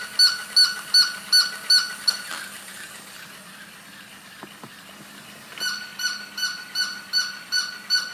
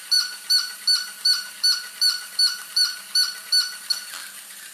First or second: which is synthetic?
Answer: second